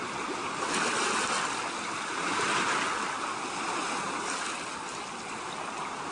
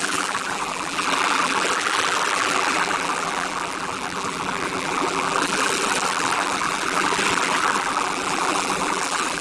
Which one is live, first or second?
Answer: first